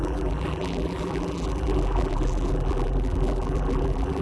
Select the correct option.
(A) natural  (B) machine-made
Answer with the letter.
B